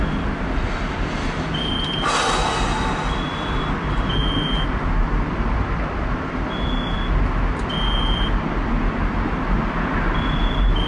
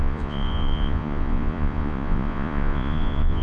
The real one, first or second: first